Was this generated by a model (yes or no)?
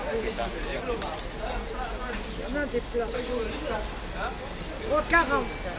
no